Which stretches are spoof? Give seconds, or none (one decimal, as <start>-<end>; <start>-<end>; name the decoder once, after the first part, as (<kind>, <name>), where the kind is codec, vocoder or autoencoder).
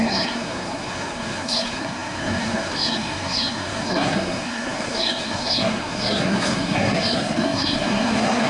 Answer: 0.0-8.5 (codec, SNAC)